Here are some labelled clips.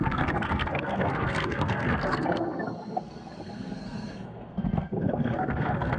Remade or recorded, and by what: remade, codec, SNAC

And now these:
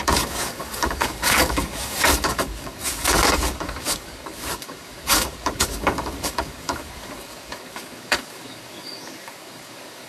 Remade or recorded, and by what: remade, codec, DAC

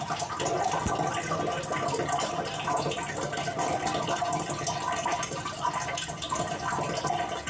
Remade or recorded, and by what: recorded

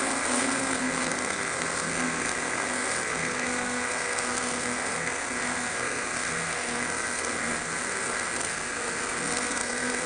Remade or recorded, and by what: remade, codec, SNAC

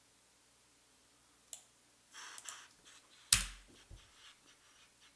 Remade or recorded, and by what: recorded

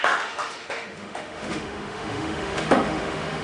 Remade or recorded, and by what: remade, autoencoder, DAC-VAE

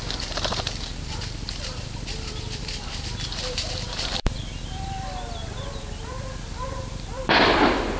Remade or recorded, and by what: remade, vocoder, BigVGAN v2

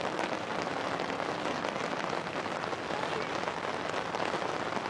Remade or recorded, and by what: recorded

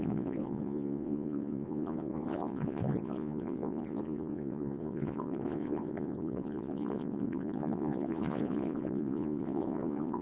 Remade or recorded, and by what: remade, vocoder, Vocos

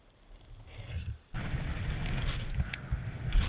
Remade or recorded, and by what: recorded